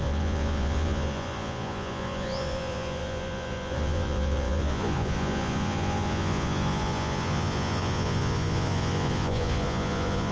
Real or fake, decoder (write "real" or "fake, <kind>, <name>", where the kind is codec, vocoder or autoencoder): fake, vocoder, Vocos